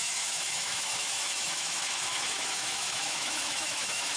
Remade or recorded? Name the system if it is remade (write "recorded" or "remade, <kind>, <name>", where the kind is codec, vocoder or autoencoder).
remade, autoencoder, DAC-VAE